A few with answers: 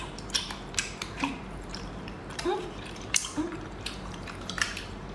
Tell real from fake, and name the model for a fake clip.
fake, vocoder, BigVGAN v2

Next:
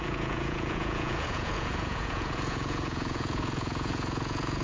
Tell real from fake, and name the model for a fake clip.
fake, vocoder, Vocos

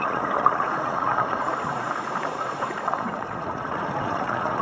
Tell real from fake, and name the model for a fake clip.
fake, vocoder, Vocos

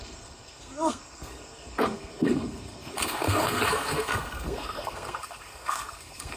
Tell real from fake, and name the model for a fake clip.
fake, codec, SNAC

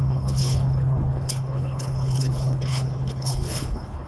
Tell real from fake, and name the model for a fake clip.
fake, codec, HILCodec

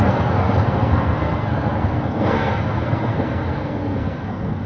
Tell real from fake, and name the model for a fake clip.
fake, codec, SNAC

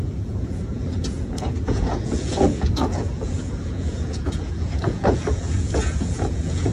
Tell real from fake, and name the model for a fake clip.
fake, vocoder, Vocos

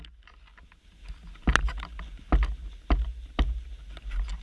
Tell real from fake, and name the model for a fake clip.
real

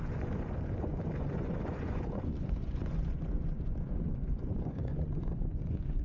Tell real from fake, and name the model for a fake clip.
fake, vocoder, Vocos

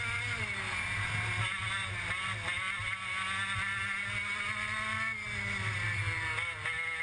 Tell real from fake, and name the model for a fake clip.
real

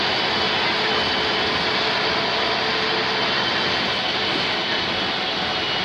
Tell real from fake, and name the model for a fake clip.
real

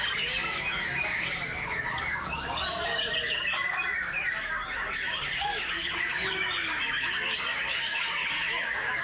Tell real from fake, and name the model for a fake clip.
fake, codec, DAC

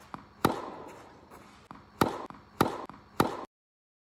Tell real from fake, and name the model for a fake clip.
real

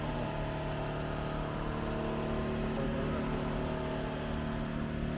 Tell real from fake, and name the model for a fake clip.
real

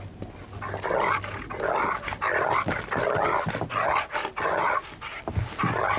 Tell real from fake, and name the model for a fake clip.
real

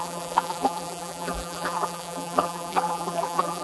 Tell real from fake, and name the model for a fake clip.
fake, vocoder, BigVGAN v2